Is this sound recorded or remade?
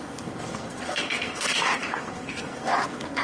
remade